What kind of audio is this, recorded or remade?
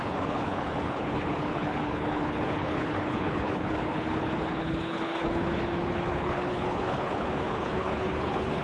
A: remade